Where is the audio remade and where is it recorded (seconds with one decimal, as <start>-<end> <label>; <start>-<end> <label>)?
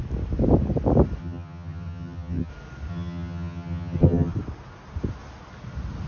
0.0-1.2 recorded; 1.2-2.5 remade; 2.5-2.9 recorded; 2.9-4.3 remade; 4.3-6.1 recorded